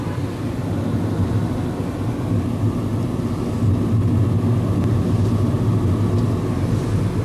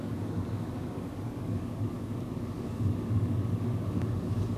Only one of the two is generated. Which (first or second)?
second